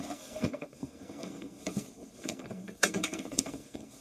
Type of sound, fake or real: fake